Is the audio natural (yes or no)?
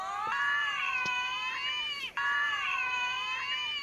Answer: no